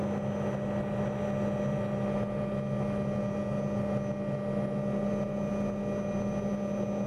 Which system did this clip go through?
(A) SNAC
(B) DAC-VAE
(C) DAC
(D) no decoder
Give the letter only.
D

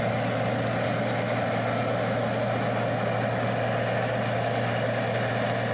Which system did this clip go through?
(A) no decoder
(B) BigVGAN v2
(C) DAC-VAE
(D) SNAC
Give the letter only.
A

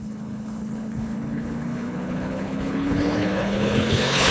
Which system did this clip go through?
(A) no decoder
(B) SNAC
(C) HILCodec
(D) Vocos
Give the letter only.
C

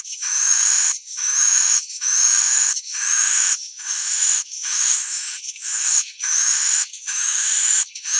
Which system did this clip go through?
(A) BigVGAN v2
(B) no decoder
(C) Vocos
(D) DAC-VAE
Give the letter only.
D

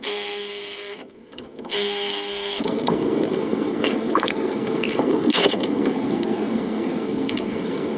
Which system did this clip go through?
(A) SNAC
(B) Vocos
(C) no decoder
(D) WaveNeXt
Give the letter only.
A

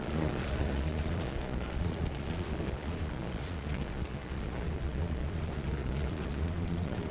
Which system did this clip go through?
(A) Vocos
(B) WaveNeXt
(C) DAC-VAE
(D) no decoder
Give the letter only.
A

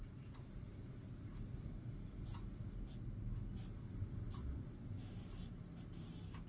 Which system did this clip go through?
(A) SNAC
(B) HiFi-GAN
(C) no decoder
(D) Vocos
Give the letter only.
C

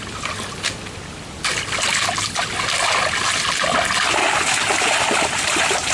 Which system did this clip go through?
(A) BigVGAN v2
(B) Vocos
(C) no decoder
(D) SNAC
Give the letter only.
C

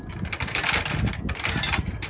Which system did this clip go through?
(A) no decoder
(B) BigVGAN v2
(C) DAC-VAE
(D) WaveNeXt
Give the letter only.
A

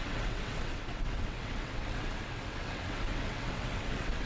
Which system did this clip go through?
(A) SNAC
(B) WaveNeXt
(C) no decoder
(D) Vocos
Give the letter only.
B